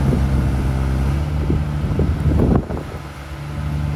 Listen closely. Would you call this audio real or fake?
real